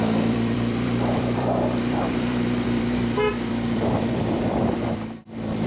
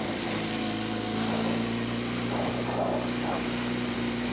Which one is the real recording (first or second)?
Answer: second